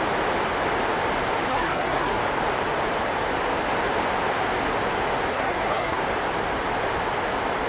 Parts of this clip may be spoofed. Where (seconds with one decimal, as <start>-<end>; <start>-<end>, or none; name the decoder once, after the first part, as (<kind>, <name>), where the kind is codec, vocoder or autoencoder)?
1.5-2.2 (codec, SNAC); 5.3-6.0